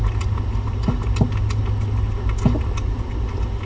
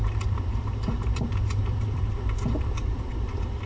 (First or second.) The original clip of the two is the first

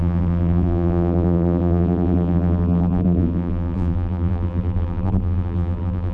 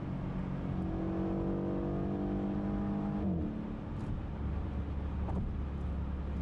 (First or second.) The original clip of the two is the second